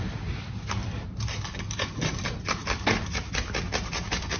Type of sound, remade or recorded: recorded